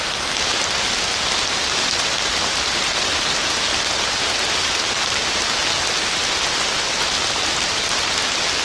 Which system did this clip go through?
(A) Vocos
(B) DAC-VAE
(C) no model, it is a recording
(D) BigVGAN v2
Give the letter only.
C